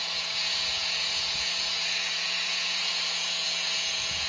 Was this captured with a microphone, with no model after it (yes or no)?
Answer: no